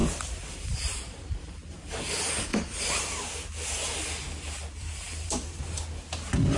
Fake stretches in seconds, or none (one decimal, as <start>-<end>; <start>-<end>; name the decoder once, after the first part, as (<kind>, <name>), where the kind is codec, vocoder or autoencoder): 2.5-3.1 (vocoder, BigVGAN v2); 4.8-5.8